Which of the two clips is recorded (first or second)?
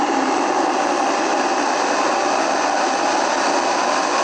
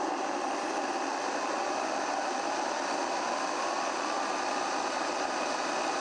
first